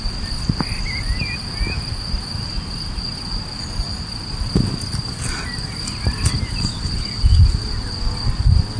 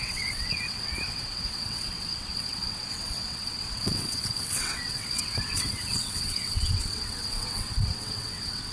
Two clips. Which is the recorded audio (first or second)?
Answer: first